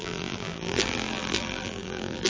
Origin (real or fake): fake